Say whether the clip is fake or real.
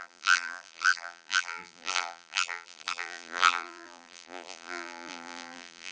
fake